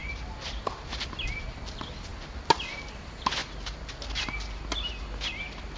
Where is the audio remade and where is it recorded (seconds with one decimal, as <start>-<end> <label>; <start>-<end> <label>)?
0.0-5.8 recorded